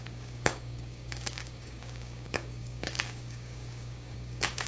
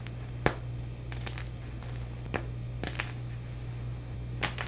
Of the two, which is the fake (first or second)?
first